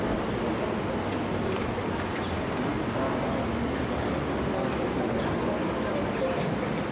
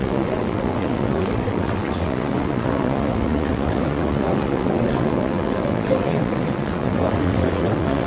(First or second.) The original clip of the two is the first